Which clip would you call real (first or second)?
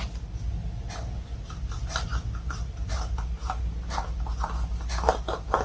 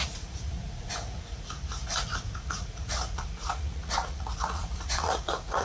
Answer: first